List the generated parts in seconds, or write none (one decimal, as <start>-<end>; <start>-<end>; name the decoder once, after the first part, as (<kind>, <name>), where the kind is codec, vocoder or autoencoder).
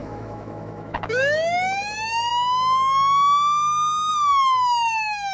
0.0-2.3 (autoencoder, DAC-VAE); 4.1-5.3